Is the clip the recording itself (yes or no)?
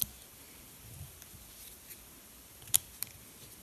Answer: yes